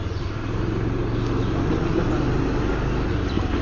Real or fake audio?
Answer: real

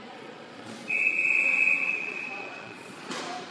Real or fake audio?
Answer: fake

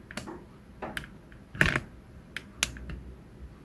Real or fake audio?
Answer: real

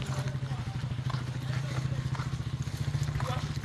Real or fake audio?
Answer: real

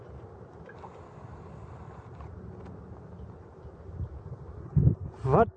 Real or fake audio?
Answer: real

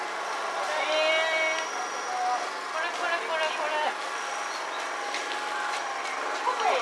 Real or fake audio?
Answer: real